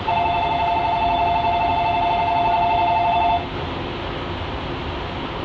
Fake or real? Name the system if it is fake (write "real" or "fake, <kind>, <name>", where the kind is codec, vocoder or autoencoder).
real